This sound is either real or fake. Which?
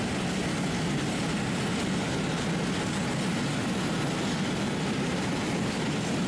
real